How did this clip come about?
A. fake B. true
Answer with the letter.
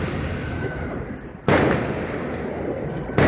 B